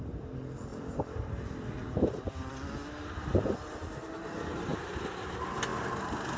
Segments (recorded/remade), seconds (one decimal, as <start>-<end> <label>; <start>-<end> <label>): 0.0-0.7 recorded; 0.7-2.5 remade; 2.5-4.7 recorded; 4.7-5.3 remade; 5.3-5.7 recorded; 5.7-6.4 remade